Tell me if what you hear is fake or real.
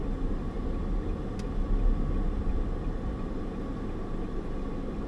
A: real